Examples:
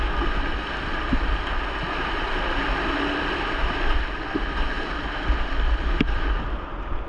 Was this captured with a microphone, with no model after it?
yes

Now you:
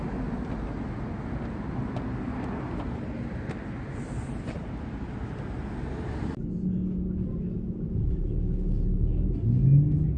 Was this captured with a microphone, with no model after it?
yes